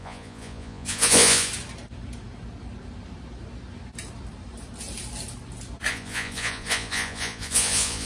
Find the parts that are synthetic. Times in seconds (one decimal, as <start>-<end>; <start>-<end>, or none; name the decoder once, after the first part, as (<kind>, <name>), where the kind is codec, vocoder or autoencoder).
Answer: 0.0-1.5 (vocoder, Vocos); 5.9-8.1